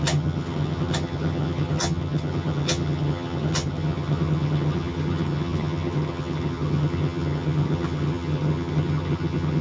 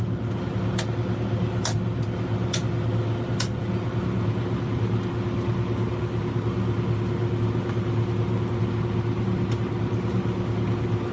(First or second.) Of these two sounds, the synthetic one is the first